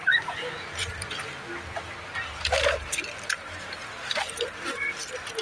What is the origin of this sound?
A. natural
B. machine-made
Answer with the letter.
A